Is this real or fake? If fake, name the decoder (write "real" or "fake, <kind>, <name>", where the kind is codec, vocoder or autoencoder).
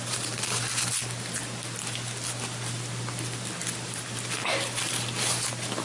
real